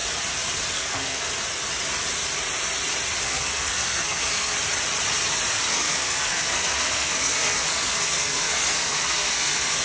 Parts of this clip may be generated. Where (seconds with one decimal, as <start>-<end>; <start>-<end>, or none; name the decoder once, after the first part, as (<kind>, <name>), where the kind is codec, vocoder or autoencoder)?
0.7-1.3 (codec, SNAC); 3.2-4.5; 5.5-9.8